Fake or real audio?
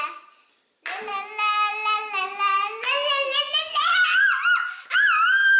real